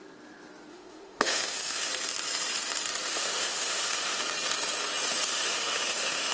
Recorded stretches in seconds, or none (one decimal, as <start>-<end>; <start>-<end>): 0.0-0.7; 1.9-3.1; 4.2-5.3